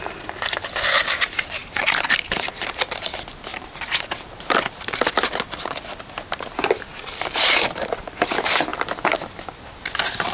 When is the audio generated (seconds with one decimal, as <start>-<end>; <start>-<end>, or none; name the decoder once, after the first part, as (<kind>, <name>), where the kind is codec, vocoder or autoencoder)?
1.6-2.8 (vocoder, BigVGAN v2); 3.5-5.1; 6.9-7.9